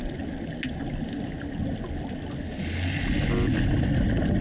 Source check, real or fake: real